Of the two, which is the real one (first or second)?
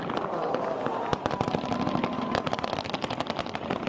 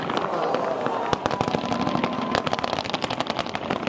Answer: second